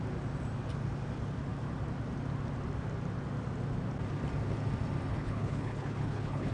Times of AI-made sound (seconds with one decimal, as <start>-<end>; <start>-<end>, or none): 5.1-6.5